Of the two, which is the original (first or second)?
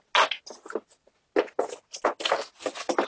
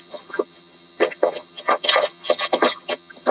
first